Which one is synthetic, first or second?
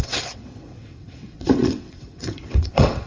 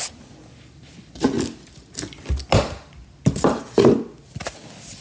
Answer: first